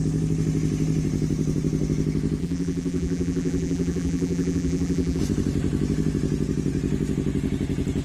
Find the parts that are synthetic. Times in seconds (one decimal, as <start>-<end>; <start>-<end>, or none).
2.4-5.2